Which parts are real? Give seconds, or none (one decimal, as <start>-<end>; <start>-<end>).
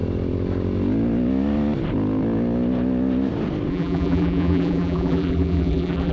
0.0-3.7